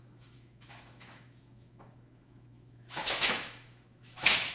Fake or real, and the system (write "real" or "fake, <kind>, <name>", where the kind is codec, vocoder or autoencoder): fake, autoencoder, DAC-VAE